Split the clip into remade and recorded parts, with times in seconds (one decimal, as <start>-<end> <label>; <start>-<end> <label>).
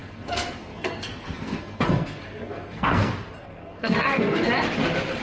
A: 0.0-3.1 remade; 3.1-3.5 recorded; 3.5-4.5 remade; 4.5-5.2 recorded